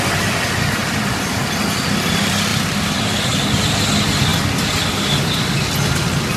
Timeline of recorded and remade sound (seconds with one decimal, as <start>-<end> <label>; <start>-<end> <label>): 0.0-0.8 recorded; 0.8-1.3 remade; 1.3-2.5 recorded; 2.5-3.8 remade; 3.8-6.4 recorded